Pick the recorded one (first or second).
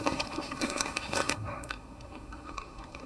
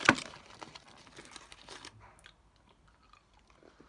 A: second